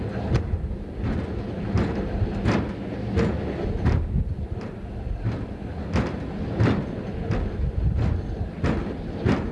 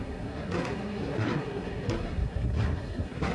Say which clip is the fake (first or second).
second